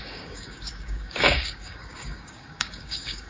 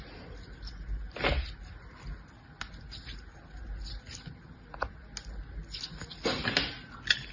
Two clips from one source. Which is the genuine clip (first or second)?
second